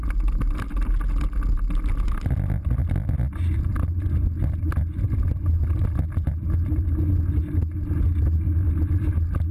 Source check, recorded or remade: recorded